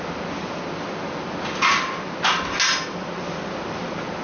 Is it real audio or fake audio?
real